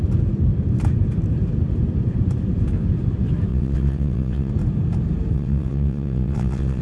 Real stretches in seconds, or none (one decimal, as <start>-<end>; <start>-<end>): 0.0-3.5; 4.5-5.3